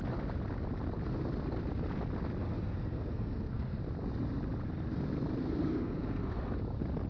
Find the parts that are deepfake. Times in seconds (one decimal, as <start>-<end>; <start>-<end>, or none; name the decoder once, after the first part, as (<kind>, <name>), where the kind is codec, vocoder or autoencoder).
2.4-3.8 (codec, SNAC); 5.4-6.5